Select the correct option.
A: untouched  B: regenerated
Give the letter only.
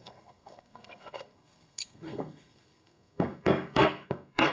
B